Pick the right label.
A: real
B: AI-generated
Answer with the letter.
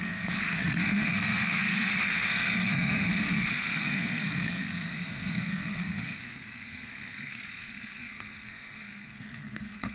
B